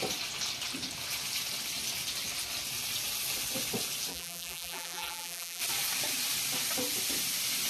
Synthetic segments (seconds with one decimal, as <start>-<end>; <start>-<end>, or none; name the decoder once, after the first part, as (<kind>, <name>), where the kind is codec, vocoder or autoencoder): 4.1-5.6 (vocoder, BigVGAN v2)